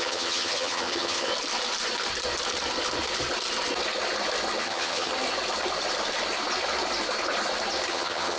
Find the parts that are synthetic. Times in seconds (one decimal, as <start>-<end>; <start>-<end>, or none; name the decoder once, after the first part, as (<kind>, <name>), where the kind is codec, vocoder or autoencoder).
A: 0.0-1.3 (vocoder, HiFi-GAN); 4.6-5.1; 7.9-8.4